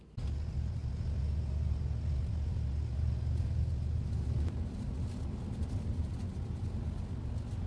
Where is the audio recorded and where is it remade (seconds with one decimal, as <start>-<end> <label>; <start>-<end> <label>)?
0.0-7.7 recorded